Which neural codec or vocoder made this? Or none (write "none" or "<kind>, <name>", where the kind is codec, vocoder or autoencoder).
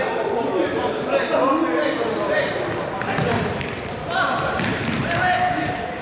none